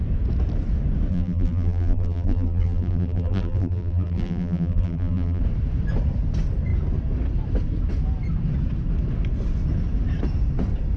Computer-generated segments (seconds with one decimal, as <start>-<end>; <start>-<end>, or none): 1.1-5.4